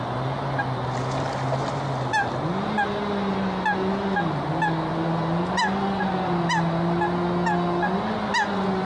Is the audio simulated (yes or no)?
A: no